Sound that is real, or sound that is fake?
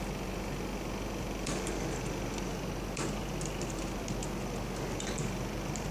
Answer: real